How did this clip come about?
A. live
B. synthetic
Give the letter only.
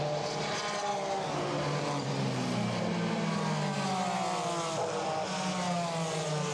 A